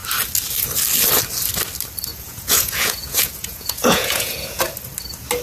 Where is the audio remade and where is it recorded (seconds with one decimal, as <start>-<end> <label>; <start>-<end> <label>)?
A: 0.0-2.1 recorded; 2.1-4.6 remade; 4.6-5.4 recorded